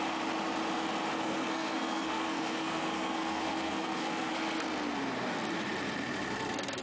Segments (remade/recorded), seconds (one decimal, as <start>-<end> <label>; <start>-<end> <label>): 0.0-1.1 recorded; 1.1-4.3 remade; 4.3-6.8 recorded